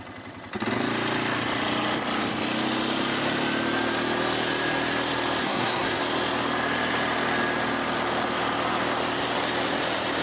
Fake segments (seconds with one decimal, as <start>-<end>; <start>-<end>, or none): 5.4-6.0